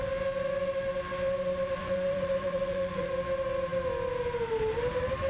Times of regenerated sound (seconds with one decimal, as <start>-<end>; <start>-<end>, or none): 1.8-3.1